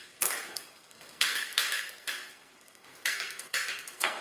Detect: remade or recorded remade